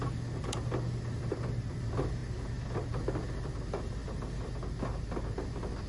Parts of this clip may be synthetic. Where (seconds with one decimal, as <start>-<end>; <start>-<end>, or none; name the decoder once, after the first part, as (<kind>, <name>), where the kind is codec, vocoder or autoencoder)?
none